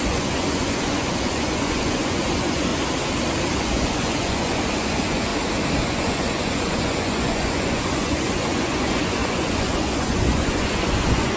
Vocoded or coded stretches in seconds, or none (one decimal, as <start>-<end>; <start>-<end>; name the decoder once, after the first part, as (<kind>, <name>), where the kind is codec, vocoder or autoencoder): 0.0-2.7 (vocoder, Vocos); 3.6-5.3; 5.8-11.4